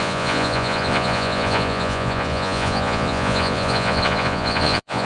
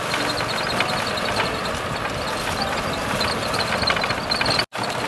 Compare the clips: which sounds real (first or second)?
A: second